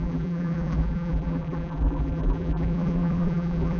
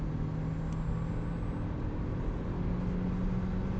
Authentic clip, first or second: second